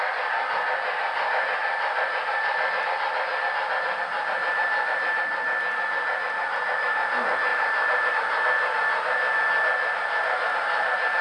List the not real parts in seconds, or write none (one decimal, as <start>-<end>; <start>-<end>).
7.5-8.1

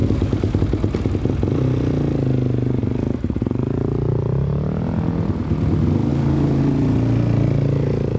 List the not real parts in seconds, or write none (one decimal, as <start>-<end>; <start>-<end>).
0.0-0.6; 6.1-6.6

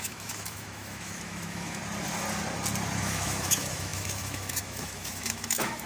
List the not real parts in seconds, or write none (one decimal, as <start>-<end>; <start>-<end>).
0.0-1.8; 3.0-5.9